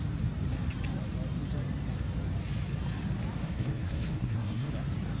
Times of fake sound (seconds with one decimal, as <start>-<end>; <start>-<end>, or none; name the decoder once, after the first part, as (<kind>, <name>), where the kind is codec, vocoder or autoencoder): 3.4-4.7 (codec, SNAC)